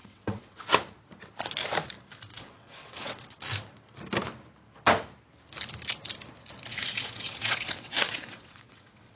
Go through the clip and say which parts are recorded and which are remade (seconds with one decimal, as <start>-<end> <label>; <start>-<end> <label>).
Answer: 0.0-0.6 remade; 0.6-2.3 recorded; 2.3-3.4 remade; 3.4-6.7 recorded; 6.7-9.2 remade